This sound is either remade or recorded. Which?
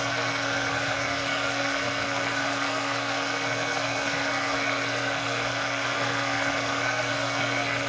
remade